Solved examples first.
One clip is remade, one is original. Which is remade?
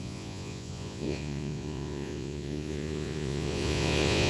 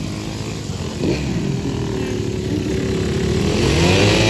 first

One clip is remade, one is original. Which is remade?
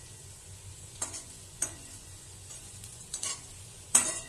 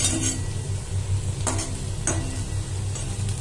first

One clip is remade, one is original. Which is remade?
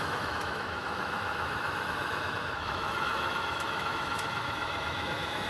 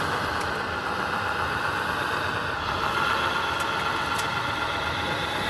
first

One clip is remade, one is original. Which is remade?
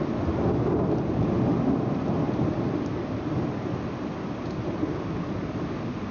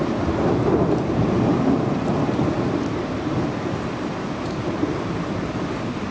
second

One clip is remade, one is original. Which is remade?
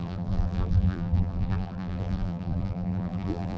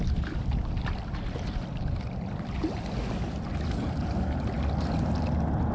first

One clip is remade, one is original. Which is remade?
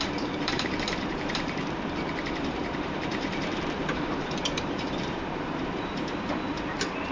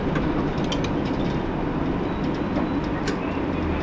first